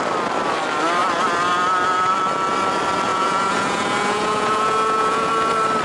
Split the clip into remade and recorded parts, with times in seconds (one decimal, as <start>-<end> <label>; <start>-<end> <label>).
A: 0.0-3.1 recorded; 3.1-5.3 remade; 5.3-5.8 recorded